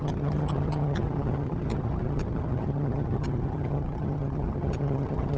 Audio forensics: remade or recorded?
remade